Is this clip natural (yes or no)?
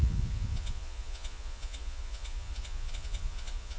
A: no